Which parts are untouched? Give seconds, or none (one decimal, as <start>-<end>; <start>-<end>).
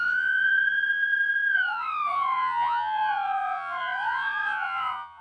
none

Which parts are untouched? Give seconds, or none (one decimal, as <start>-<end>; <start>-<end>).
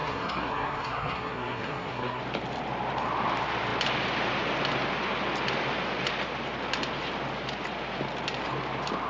2.2-9.1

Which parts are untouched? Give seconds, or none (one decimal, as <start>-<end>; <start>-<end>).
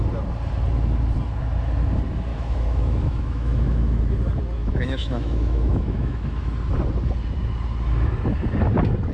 0.0-2.3; 4.0-4.6; 6.5-9.1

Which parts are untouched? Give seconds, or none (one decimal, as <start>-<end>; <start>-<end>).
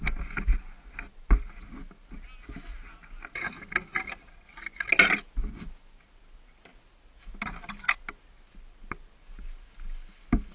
0.0-10.5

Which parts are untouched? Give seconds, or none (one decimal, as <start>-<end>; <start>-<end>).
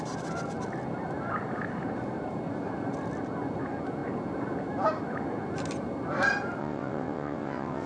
0.0-6.6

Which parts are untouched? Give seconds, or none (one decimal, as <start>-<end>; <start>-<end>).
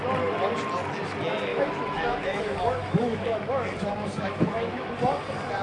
0.0-1.5; 4.9-5.6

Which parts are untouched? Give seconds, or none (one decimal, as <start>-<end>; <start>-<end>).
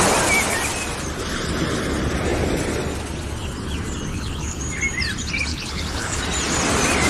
0.0-4.1; 4.6-5.5; 6.2-7.1